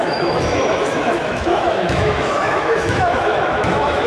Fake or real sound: fake